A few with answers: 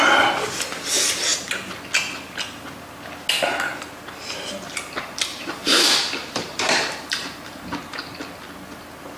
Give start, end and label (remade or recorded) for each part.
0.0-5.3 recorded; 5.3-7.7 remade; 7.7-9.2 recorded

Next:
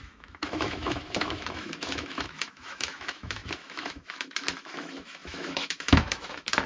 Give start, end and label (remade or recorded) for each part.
0.0-6.7 remade

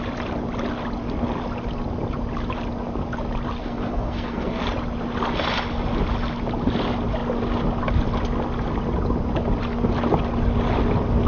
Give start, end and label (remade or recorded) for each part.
0.0-3.6 recorded; 3.6-4.6 remade; 4.6-11.3 recorded